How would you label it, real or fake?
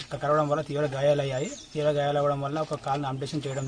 real